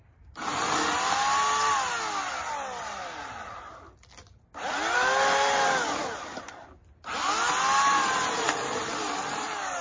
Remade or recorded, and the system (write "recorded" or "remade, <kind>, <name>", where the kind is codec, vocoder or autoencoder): recorded